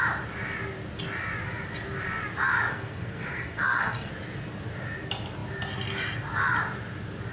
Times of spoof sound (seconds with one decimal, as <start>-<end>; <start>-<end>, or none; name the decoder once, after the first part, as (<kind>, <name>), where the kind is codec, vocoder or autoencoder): 2.7-4.1 (codec, SNAC)